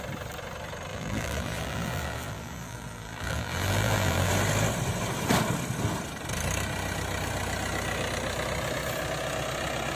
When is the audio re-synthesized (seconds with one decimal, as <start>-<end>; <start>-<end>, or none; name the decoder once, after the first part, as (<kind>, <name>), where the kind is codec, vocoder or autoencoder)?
0.9-4.3 (vocoder, BigVGAN v2)

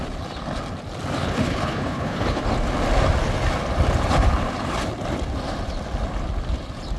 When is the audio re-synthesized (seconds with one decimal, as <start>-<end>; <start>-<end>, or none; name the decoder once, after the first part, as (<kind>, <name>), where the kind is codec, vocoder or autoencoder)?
1.2-2.4 (codec, HILCodec)

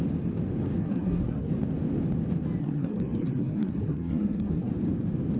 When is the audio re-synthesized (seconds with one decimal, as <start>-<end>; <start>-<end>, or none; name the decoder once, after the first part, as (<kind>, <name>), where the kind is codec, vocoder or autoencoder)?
0.8-1.5 (codec, SNAC); 2.6-4.7

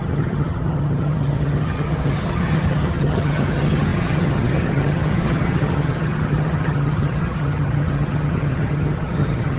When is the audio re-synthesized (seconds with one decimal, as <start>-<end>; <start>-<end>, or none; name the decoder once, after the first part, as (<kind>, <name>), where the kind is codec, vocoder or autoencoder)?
0.0-9.6 (vocoder, HiFi-GAN)

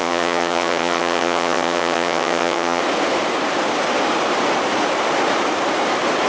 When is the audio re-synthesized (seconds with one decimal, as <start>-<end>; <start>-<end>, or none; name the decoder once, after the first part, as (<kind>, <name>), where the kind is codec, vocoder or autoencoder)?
0.0-2.8 (vocoder, HiFi-GAN)